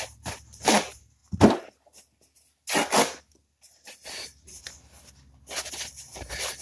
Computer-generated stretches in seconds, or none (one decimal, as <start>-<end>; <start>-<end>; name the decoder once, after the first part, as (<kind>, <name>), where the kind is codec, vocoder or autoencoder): none